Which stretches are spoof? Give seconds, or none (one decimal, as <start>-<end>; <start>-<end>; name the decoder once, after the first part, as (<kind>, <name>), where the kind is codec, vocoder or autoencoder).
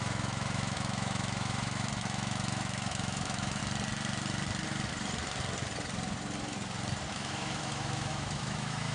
0.0-3.6 (autoencoder, DAC-VAE); 7.1-8.9